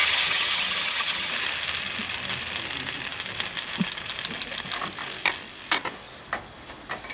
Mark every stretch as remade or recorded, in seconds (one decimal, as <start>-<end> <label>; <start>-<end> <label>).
0.0-1.3 remade; 1.3-7.1 recorded